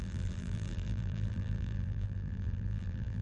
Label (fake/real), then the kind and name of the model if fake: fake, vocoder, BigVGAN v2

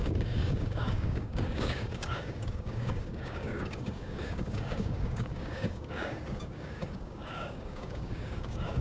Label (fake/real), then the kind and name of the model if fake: fake, codec, DAC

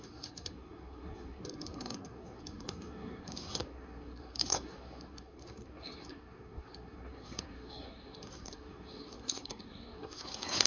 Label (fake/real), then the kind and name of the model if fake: fake, codec, SNAC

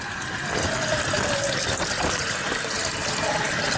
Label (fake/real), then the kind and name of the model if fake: real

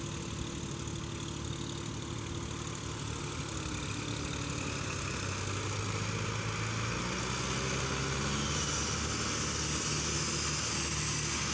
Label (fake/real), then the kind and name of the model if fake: real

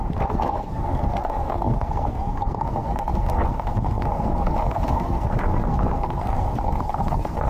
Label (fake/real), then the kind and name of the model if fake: fake, codec, SNAC